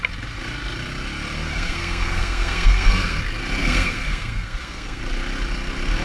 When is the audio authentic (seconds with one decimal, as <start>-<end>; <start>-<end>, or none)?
0.0-1.5; 3.2-3.6; 5.0-6.0